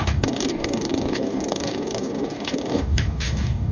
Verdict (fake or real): fake